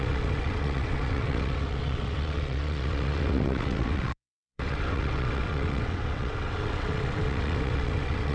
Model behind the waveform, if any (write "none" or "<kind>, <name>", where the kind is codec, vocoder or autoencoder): vocoder, WaveNeXt